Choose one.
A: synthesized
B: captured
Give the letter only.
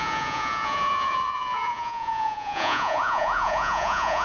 A